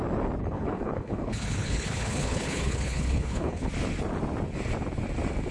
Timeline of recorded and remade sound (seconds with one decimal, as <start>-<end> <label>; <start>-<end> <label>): 0.0-0.4 recorded; 0.4-3.7 remade; 3.7-5.5 recorded